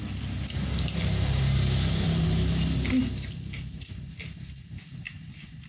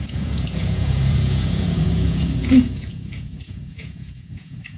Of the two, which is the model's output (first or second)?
second